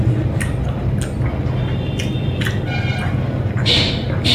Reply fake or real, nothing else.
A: real